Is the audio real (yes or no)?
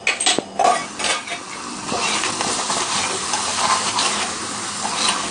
yes